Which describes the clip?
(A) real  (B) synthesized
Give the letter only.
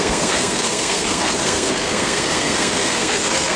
B